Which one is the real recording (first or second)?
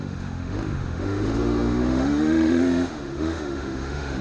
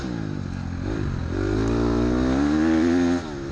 second